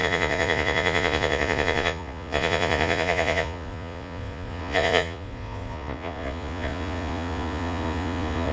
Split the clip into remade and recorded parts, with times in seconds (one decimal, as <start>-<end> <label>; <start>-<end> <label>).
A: 0.0-8.5 remade